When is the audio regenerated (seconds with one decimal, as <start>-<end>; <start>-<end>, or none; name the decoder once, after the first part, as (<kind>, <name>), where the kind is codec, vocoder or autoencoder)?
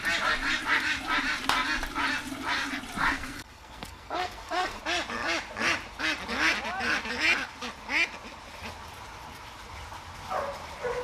3.0-4.8 (codec, SNAC)